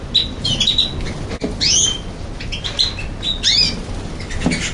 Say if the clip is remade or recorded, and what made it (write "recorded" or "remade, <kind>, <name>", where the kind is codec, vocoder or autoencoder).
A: recorded